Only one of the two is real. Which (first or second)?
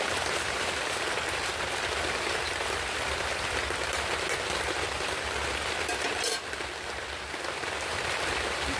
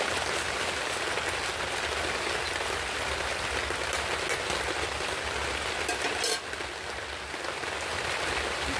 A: second